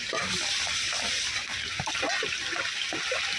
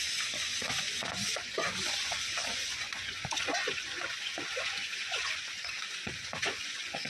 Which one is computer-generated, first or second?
second